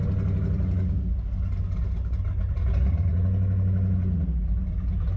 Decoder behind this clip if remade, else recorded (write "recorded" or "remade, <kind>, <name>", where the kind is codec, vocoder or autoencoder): recorded